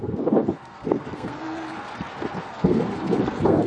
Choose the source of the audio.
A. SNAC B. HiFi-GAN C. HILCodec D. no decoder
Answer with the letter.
A